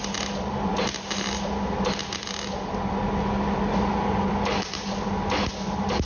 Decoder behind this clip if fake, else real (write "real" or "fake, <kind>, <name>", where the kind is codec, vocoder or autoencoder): real